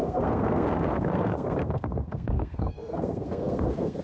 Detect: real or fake fake